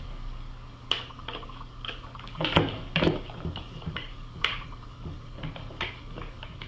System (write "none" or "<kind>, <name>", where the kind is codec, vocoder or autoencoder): codec, DAC